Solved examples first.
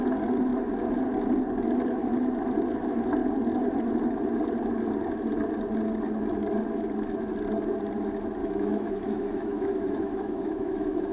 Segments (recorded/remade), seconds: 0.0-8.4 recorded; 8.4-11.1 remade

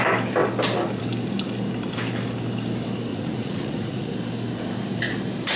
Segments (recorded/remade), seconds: 0.0-3.1 recorded; 3.1-4.1 remade; 4.1-5.6 recorded

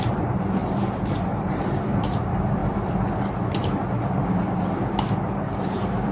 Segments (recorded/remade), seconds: 0.0-2.6 remade; 2.6-5.6 recorded; 5.6-6.1 remade